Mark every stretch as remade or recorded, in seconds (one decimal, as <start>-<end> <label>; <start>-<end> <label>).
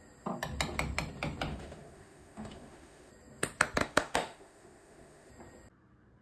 0.0-1.5 recorded; 1.5-3.1 remade; 3.1-3.8 recorded; 3.8-5.3 remade; 5.3-6.2 recorded